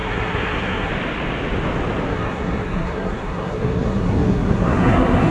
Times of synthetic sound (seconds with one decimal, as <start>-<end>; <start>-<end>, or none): 0.0-0.9; 2.1-5.3